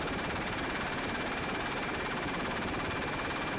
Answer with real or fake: fake